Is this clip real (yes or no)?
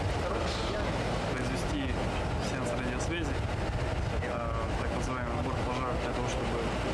yes